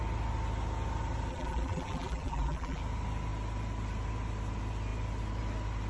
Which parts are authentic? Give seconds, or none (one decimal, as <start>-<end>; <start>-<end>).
0.0-1.3; 2.8-5.9